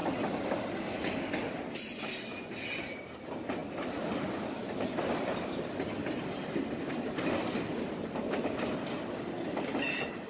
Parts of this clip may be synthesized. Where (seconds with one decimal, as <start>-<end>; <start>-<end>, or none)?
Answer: none